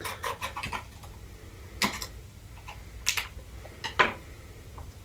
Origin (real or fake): real